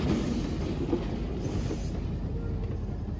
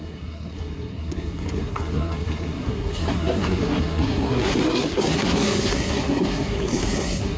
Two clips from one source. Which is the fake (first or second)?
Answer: second